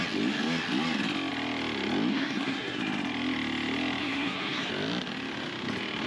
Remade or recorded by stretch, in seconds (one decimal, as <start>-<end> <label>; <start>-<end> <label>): 0.0-2.1 recorded; 2.1-2.8 remade; 2.8-4.0 recorded; 4.0-4.7 remade; 4.7-6.1 recorded